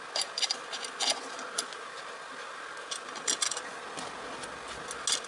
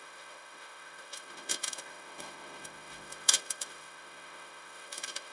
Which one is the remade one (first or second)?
second